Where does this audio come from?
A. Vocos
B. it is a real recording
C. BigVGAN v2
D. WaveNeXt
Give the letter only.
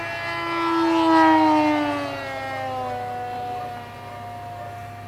B